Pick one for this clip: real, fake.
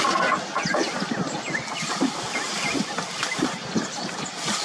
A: real